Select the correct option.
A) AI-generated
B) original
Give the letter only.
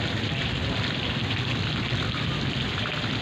A